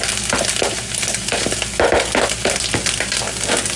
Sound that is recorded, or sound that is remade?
recorded